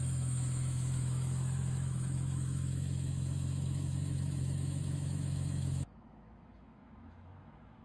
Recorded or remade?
remade